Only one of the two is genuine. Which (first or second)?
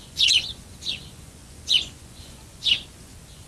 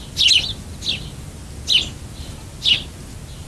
second